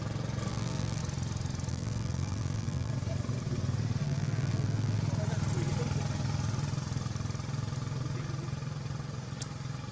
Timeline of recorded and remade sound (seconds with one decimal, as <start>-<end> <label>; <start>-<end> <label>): 0.0-0.5 recorded; 0.5-1.0 remade; 1.0-1.7 recorded; 1.7-2.9 remade; 2.9-4.0 recorded; 4.0-5.0 remade; 5.0-9.9 recorded